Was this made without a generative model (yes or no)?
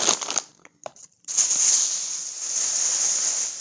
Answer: yes